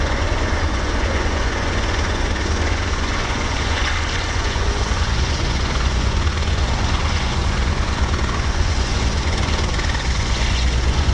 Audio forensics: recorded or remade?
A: remade